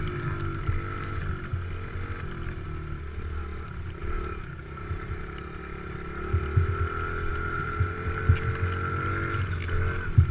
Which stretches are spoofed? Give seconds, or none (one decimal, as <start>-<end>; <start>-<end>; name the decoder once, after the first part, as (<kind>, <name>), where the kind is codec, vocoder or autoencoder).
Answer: 4.0-5.6 (vocoder, BigVGAN v2); 7.3-8.2